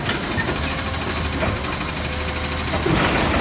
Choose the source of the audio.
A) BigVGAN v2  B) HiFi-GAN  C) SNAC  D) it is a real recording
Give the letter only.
D